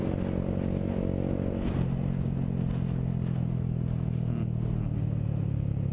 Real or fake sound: real